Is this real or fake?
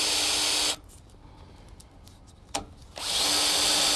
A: real